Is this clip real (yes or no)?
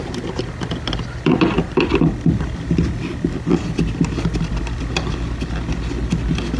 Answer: yes